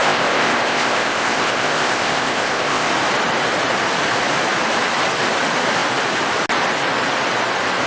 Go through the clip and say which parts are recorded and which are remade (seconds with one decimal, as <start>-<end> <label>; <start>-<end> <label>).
0.0-2.9 remade; 2.9-7.9 recorded